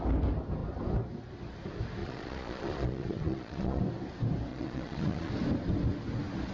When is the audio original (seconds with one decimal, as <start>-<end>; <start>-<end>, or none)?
0.0-2.0; 3.8-4.5; 5.3-6.5